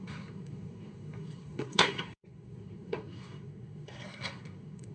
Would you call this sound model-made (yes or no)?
yes